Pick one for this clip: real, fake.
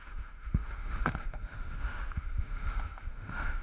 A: fake